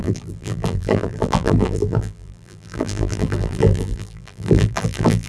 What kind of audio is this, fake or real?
fake